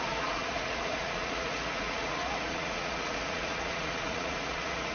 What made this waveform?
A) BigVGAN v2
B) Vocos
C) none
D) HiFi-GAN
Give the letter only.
B